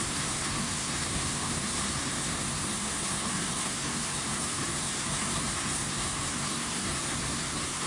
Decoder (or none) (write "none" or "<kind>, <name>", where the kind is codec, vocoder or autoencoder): codec, SNAC